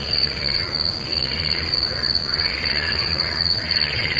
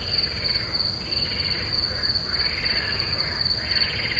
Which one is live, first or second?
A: second